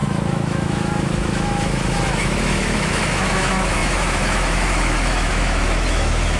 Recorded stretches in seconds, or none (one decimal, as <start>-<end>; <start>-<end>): none